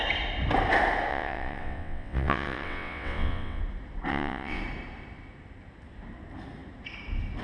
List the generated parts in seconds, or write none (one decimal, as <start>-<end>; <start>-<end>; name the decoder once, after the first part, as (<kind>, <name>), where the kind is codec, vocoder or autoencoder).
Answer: 1.1-3.6 (vocoder, WaveNeXt); 4.1-4.6